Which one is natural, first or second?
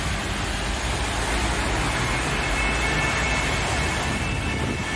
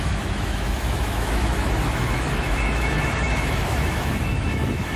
first